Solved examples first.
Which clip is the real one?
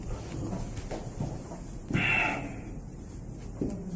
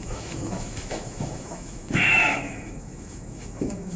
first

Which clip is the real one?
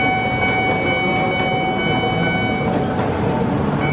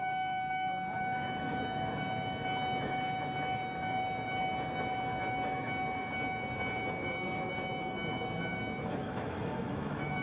first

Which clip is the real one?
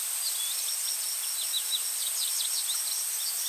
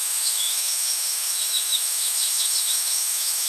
first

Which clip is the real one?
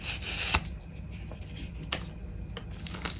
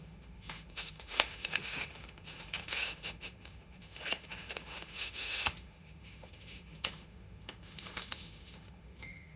first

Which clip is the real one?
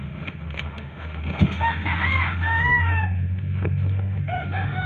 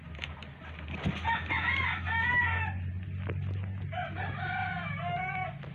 second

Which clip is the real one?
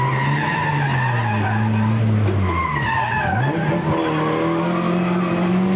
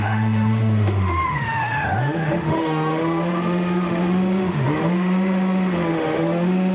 first